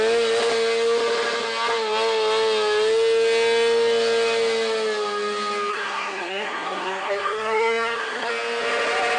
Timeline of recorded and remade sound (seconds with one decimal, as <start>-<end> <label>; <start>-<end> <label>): 0.0-5.7 recorded; 5.7-8.3 remade; 8.3-9.2 recorded